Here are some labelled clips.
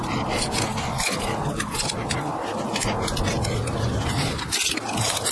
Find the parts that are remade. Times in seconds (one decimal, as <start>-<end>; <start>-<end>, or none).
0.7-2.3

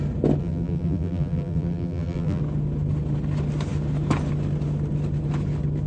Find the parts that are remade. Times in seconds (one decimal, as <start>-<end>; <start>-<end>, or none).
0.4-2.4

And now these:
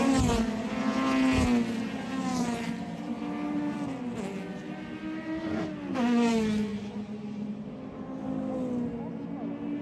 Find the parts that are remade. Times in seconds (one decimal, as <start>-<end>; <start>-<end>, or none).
2.3-3.2; 6.7-8.1

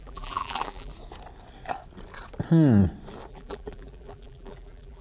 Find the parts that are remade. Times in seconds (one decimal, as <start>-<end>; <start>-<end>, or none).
0.0-0.9; 3.3-5.0